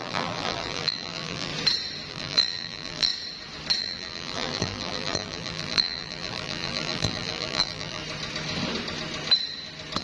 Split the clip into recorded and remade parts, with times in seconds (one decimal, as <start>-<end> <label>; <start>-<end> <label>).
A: 0.0-1.5 remade; 1.5-2.1 recorded; 2.1-3.1 remade; 3.1-3.8 recorded; 3.8-8.0 remade; 8.0-10.0 recorded